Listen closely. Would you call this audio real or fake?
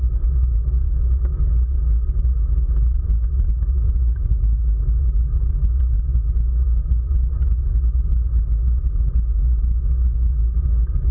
real